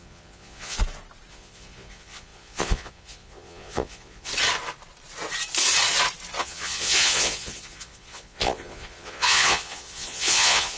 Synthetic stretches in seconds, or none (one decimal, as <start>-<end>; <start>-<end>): 0.0-0.8; 1.3-4.3; 6.4-10.8